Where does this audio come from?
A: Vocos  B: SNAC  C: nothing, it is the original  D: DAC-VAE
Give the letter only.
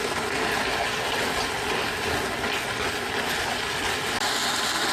C